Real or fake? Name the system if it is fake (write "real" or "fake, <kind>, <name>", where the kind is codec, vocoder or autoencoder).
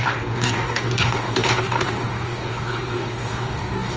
fake, codec, DAC